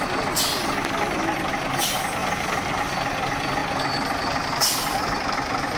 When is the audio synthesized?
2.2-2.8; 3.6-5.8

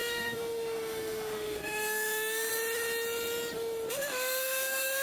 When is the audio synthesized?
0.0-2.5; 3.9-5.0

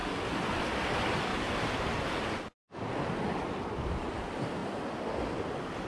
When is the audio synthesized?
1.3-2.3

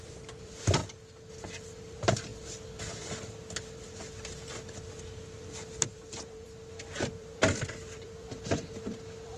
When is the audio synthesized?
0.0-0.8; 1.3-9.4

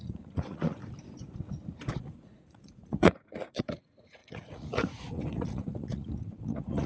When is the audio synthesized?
0.0-0.8; 2.0-6.9

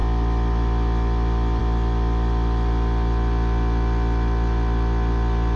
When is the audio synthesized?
none

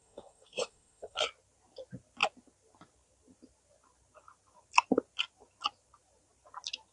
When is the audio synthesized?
0.0-1.2